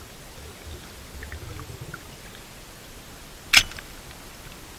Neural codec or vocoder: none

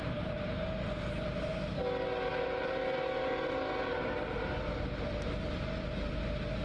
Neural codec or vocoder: none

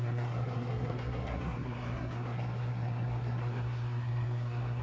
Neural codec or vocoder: codec, SNAC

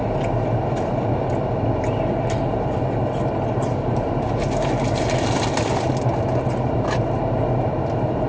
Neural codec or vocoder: none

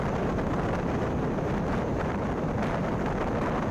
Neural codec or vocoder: none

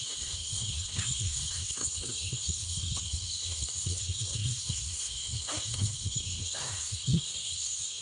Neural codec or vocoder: codec, SNAC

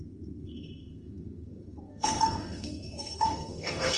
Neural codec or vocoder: codec, SNAC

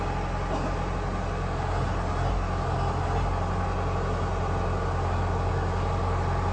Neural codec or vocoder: none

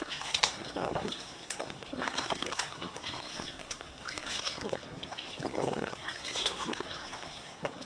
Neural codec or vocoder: codec, SNAC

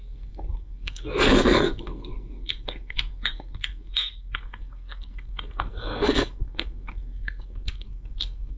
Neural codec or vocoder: codec, SNAC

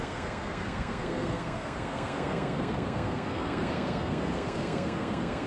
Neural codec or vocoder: codec, SNAC